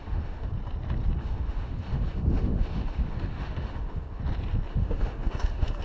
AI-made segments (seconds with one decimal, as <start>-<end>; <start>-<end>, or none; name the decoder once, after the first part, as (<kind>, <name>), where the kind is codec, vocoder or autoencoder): 0.0-0.5 (autoencoder, DAC-VAE); 1.2-4.2; 4.7-5.8